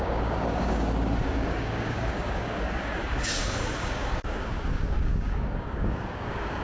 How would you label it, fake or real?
fake